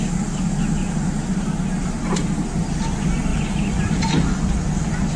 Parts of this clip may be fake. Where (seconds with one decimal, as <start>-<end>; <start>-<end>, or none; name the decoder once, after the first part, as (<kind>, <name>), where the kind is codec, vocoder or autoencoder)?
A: 2.0-2.5 (vocoder, BigVGAN v2); 3.3-5.2